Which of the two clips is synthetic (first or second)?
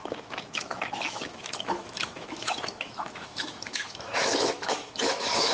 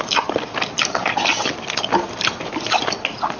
first